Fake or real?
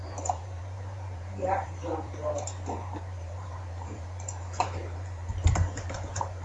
fake